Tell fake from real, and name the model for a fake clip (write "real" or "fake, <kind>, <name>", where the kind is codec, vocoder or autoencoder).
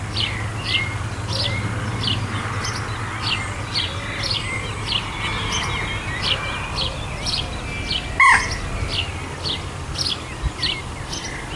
real